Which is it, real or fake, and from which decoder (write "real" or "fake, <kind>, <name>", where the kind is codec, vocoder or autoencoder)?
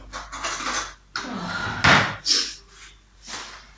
real